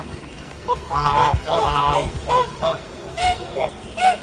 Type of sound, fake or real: fake